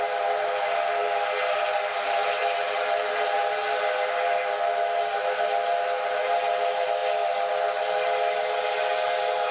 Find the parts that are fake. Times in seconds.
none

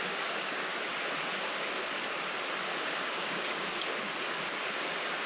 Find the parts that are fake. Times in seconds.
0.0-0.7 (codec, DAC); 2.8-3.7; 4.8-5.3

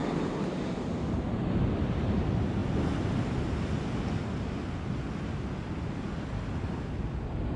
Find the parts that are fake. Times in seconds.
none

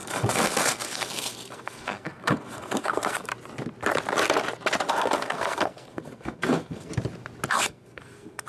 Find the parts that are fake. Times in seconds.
0.0-3.3 (codec, SNAC); 4.9-6.9; 7.5-8.5

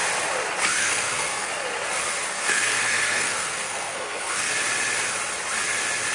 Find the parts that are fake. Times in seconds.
0.8-1.5 (codec, SNAC); 2.3-4.5